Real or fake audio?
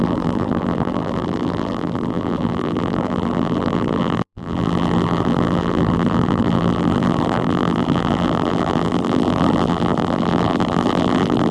fake